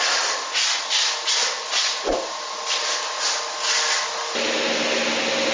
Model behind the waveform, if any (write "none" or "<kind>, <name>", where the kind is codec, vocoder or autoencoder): none